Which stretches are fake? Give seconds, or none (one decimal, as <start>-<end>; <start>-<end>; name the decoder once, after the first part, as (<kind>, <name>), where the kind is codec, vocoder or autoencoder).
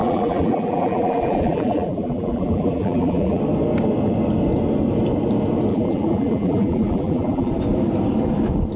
0.0-3.4 (vocoder, BigVGAN v2); 5.7-7.5